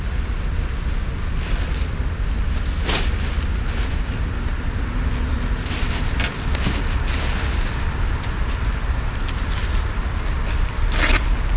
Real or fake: real